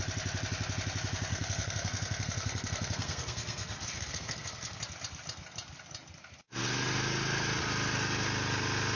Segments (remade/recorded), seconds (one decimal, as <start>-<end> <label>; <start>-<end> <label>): 0.0-1.3 recorded; 1.3-4.8 remade; 4.8-9.0 recorded